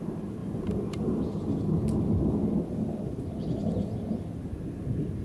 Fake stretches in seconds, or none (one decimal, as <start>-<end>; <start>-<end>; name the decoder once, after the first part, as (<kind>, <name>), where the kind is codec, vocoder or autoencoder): none